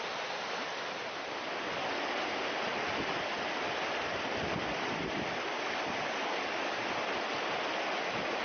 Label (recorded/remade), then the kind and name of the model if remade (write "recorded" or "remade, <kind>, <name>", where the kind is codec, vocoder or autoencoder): recorded